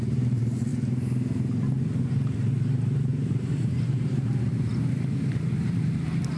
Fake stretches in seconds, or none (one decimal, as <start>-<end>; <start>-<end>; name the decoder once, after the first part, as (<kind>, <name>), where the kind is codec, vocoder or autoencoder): 0.0-0.7 (vocoder, BigVGAN v2); 2.1-4.5; 5.3-6.4